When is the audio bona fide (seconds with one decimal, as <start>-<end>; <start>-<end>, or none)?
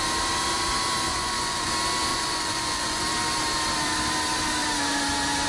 0.0-1.1; 1.7-2.1; 3.0-5.5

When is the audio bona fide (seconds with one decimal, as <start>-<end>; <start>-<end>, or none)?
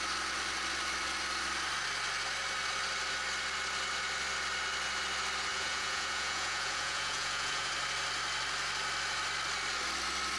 0.0-5.5; 7.7-10.4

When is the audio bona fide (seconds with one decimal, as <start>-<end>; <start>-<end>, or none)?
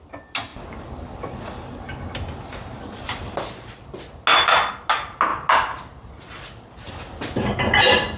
0.0-8.2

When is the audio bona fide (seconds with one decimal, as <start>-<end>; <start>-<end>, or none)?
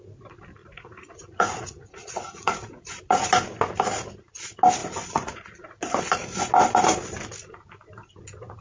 0.0-0.6; 3.0-4.8; 6.0-8.6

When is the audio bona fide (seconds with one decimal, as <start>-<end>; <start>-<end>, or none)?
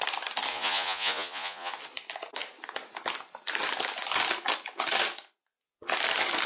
0.0-0.5; 1.7-6.5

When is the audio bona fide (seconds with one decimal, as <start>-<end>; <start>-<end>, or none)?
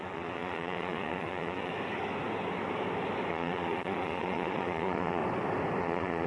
1.7-3.3; 5.2-5.8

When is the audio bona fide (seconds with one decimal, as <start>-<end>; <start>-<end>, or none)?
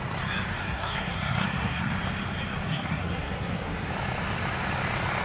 0.0-0.6; 1.9-2.7; 3.9-5.2